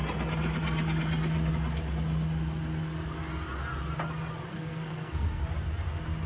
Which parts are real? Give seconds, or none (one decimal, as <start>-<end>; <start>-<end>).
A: 0.0-4.5; 5.4-6.3